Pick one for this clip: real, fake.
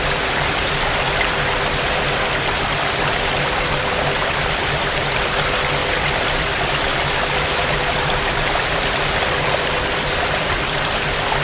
fake